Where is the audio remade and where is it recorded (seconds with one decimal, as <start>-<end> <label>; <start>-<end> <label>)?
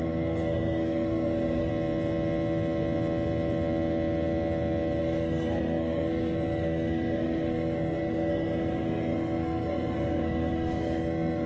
0.0-1.7 remade; 1.7-5.0 recorded; 5.0-11.5 remade